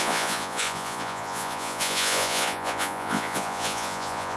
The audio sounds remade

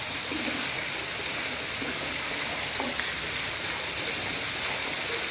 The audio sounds recorded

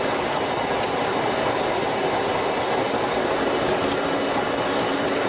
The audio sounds recorded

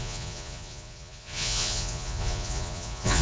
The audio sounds remade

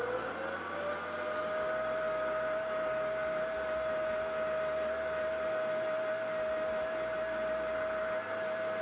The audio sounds recorded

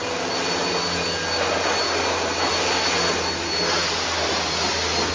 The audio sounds recorded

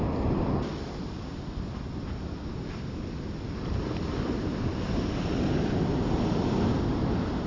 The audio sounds recorded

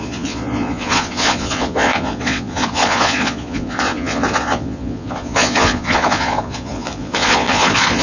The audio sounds remade